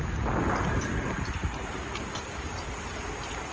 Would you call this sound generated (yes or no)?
no